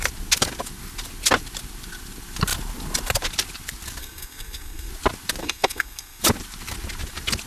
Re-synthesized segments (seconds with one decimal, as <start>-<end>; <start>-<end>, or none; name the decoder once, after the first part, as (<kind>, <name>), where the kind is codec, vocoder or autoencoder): 4.0-4.9 (codec, SNAC); 5.4-6.2